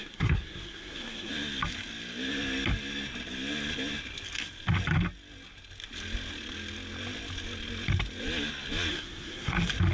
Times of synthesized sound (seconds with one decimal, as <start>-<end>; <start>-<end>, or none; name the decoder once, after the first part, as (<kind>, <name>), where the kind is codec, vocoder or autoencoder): 0.0-1.3 (codec, SNAC); 8.9-9.5